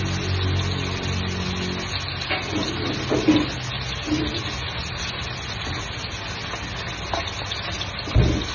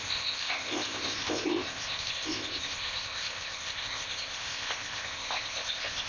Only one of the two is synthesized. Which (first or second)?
second